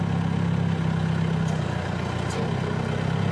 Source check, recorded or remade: recorded